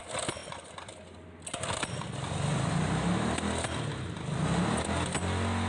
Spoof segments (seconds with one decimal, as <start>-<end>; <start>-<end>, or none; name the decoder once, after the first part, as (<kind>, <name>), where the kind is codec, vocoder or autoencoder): none